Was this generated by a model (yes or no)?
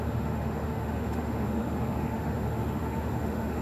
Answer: yes